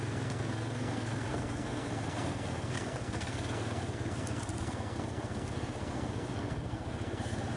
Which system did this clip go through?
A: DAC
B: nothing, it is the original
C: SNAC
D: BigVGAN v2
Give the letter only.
C